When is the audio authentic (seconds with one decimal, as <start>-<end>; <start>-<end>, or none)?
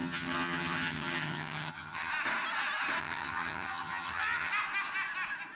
2.1-3.0; 4.5-5.5